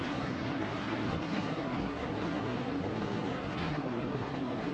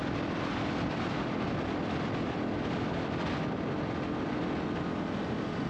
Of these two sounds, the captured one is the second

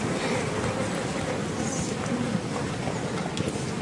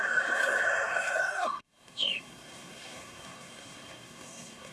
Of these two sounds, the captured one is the first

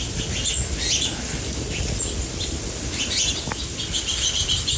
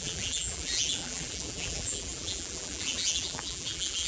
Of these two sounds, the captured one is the first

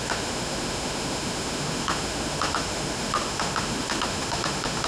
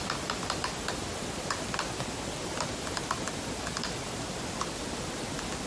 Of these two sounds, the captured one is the second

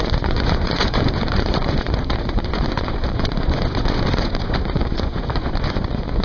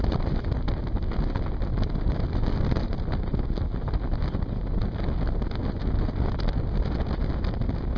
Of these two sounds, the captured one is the second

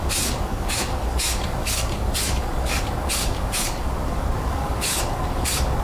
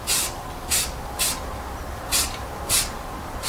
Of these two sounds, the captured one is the second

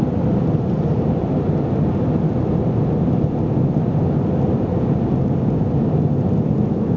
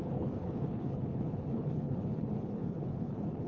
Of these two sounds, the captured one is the first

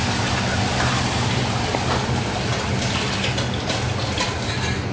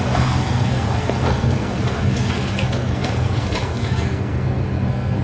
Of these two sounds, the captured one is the first